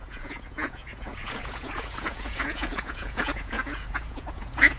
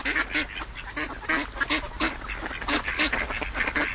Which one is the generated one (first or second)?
first